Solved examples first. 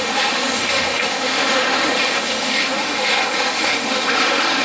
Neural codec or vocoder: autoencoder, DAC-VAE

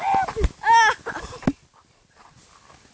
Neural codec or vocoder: none